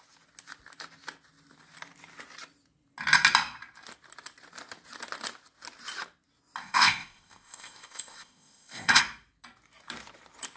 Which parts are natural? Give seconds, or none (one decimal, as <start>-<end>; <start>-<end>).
0.0-6.6; 9.0-10.6